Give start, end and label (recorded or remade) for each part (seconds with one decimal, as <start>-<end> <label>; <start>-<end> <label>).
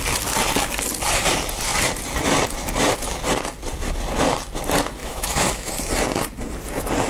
0.0-5.0 recorded; 5.0-5.7 remade; 5.7-7.1 recorded